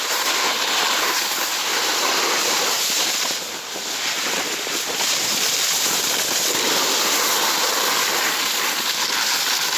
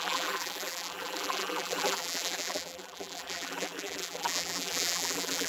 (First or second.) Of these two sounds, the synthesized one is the second